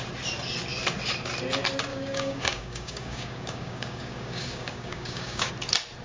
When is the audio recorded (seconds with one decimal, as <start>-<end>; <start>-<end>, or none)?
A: 0.0-1.9; 5.5-6.0